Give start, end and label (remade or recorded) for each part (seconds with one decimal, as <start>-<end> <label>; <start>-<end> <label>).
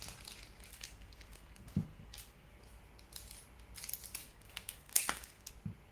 0.0-0.7 recorded; 0.7-2.5 remade; 2.5-4.2 recorded; 4.2-5.5 remade; 5.5-5.9 recorded